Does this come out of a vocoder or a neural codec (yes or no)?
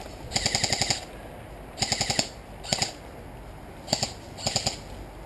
no